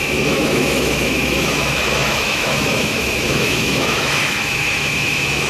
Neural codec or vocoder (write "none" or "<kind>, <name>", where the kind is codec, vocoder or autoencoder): autoencoder, DAC-VAE